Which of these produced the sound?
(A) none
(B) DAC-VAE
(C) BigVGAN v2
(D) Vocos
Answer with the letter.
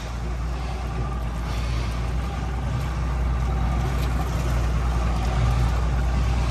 A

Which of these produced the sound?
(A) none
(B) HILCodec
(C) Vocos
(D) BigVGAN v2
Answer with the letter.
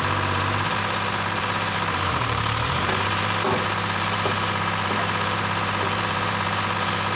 D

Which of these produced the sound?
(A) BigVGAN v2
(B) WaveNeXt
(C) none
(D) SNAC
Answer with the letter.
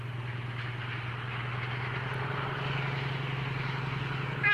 C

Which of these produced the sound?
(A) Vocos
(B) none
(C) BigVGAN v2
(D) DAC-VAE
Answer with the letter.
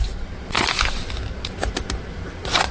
B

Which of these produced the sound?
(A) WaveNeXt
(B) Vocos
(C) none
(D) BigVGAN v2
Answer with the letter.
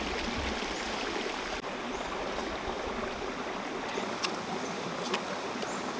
C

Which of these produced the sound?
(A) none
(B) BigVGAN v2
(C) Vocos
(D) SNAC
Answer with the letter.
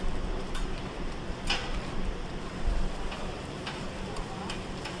B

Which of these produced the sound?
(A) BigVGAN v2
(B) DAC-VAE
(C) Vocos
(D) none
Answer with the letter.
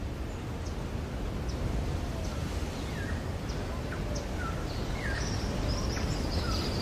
D